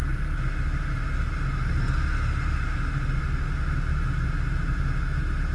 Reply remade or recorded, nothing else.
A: recorded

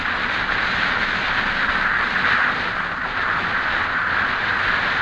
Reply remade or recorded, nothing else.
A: recorded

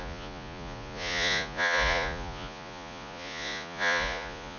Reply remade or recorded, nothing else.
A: remade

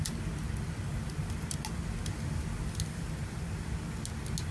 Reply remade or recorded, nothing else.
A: recorded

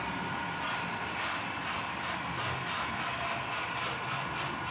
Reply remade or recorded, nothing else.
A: recorded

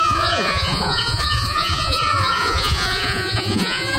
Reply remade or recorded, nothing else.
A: remade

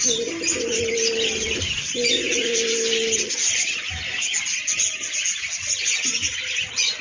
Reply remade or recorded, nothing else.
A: recorded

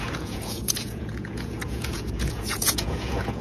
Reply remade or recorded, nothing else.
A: remade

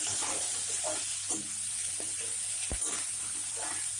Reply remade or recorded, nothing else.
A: recorded